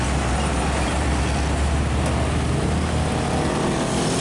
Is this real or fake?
real